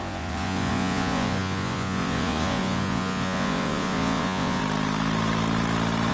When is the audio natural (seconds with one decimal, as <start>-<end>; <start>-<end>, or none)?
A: 4.6-6.1